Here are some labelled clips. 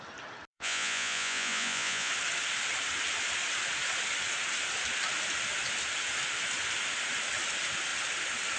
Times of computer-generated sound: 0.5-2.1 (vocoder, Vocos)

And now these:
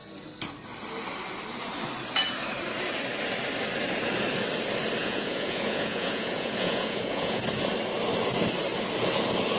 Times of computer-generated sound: 5.0-7.4 (vocoder, Vocos)